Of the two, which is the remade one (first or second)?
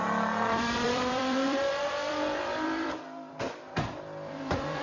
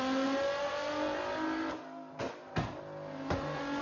first